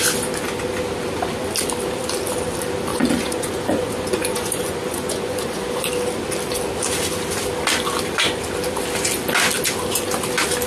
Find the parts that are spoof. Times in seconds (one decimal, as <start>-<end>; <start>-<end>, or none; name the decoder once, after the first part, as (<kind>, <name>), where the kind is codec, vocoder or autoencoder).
2.9-5.9 (vocoder, Vocos)